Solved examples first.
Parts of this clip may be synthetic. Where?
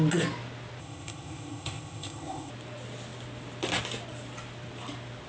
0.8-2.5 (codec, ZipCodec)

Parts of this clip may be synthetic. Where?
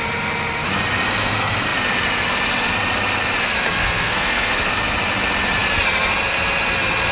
3.8-4.7 (codec, SNAC)